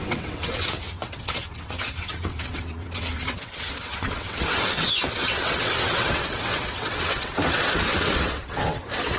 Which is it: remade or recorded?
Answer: remade